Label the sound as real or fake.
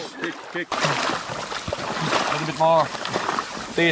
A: real